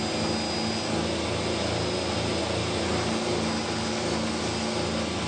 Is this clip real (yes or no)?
yes